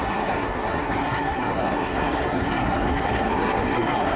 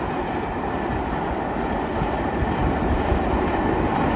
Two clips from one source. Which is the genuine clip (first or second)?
second